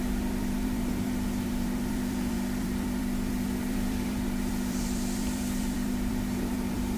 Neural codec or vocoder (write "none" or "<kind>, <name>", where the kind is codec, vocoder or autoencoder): vocoder, BigVGAN v2